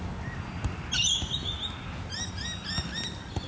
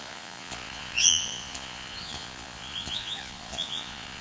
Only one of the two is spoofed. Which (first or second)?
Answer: second